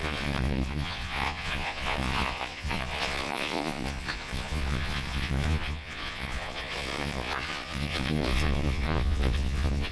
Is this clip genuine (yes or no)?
no